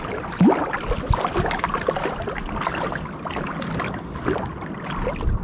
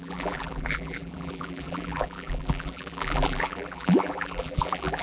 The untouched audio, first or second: first